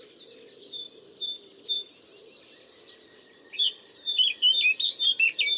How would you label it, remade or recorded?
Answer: recorded